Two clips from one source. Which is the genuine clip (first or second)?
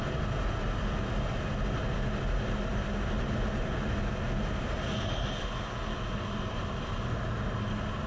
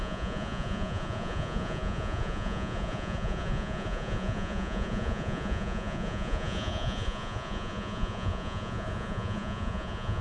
first